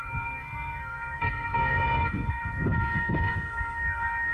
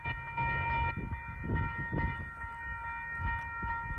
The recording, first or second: second